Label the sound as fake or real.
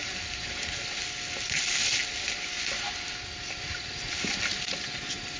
real